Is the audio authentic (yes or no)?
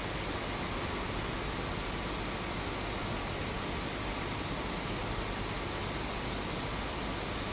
yes